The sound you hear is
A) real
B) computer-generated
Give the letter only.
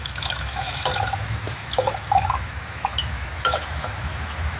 B